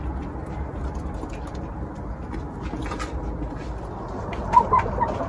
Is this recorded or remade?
recorded